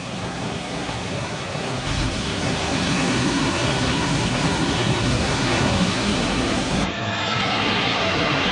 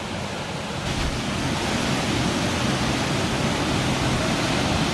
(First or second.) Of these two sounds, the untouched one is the second